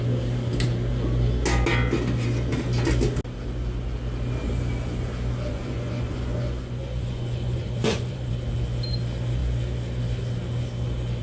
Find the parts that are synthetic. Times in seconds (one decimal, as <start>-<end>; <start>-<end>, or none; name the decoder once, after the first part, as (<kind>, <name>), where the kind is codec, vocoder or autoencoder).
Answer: 5.5-8.3 (vocoder, Vocos)